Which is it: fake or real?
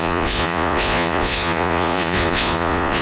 fake